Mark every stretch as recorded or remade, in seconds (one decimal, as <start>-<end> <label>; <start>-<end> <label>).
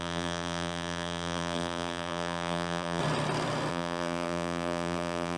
0.0-3.0 remade; 3.0-3.7 recorded; 3.7-5.4 remade